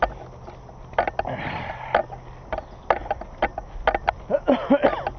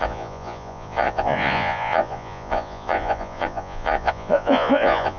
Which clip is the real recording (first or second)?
first